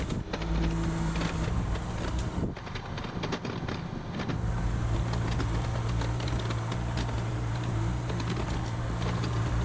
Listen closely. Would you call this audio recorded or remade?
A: recorded